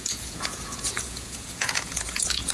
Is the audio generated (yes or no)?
yes